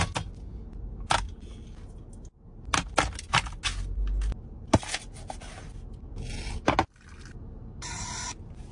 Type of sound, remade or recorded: recorded